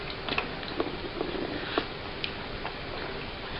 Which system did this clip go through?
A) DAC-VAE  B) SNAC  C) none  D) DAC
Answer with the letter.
C